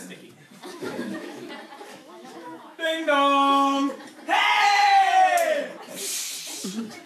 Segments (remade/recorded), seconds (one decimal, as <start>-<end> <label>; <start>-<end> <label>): 0.0-0.8 recorded; 0.8-1.5 remade; 1.5-1.9 recorded; 1.9-3.9 remade; 3.9-7.1 recorded